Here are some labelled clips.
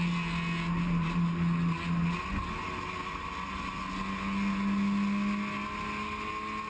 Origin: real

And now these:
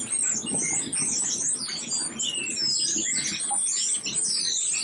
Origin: real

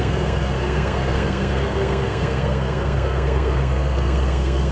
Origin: fake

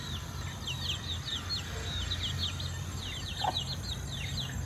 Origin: real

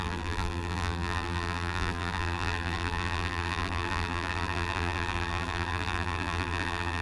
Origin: fake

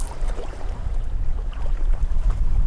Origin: fake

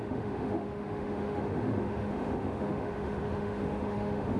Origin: fake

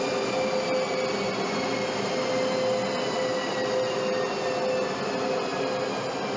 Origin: real